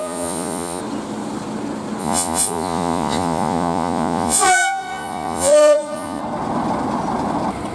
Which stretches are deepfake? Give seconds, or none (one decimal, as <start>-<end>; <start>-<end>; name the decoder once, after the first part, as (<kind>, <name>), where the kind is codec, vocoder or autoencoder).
0.0-0.8 (vocoder, Vocos); 2.0-6.2